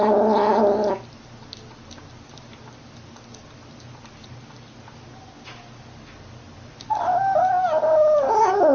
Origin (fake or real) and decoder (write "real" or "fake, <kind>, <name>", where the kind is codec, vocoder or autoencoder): real